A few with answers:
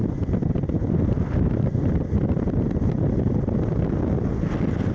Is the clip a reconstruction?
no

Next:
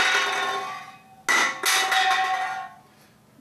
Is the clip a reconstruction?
no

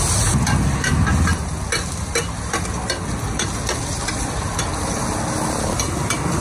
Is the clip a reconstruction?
no